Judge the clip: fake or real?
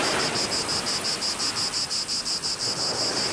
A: real